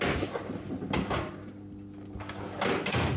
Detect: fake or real real